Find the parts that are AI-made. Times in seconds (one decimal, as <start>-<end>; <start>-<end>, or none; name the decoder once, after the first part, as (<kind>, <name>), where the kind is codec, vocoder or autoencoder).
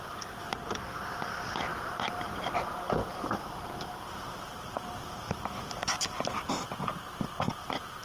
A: 1.7-6.5 (vocoder, BigVGAN v2)